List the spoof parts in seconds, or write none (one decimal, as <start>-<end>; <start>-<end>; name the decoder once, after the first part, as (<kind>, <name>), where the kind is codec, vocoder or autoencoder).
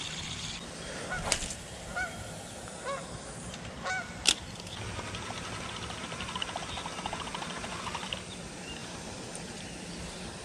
8.8-9.6 (vocoder, BigVGAN v2)